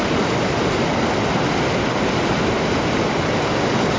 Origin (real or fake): real